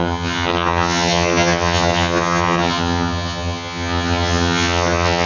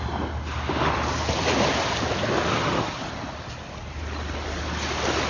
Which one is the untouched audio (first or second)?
second